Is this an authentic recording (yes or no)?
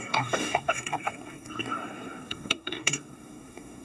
no